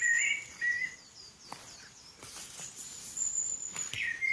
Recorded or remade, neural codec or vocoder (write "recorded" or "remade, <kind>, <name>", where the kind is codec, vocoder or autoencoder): recorded